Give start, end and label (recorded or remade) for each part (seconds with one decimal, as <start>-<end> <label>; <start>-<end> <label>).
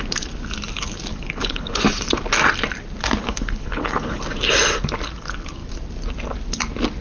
0.0-1.1 recorded; 1.1-1.8 remade; 1.8-3.2 recorded; 3.2-4.2 remade; 4.2-7.0 recorded